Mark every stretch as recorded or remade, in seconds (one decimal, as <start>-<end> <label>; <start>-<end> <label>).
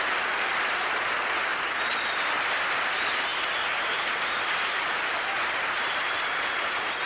0.0-7.1 recorded